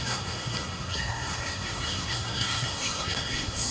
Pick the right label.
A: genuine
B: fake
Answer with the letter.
B